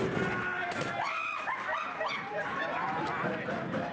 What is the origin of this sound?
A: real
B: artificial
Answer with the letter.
A